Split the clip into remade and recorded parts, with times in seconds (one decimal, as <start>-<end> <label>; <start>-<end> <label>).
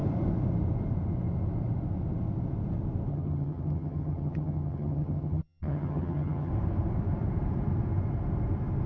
0.0-3.1 recorded; 3.1-6.5 remade; 6.5-8.9 recorded